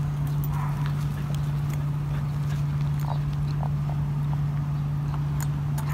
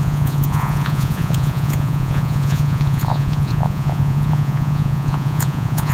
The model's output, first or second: second